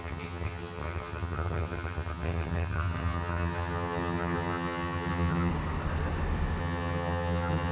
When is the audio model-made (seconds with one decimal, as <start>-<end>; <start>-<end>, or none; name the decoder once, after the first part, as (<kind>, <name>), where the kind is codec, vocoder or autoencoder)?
0.0-5.5 (vocoder, HiFi-GAN); 6.6-7.7